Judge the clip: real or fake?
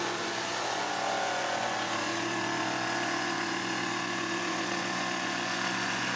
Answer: fake